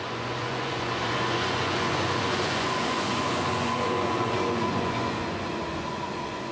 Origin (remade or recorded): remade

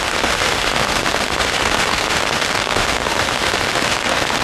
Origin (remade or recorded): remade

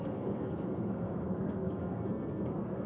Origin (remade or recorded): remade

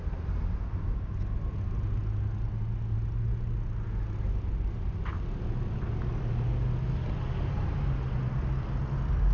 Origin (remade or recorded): recorded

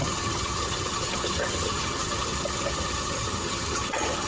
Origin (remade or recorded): remade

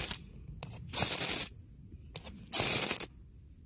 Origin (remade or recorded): recorded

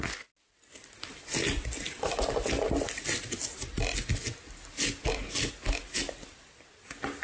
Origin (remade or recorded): recorded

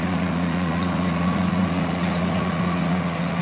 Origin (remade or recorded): remade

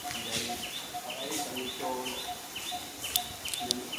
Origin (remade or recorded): recorded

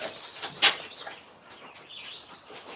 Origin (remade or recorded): recorded